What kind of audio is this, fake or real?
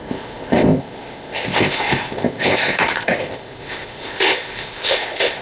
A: fake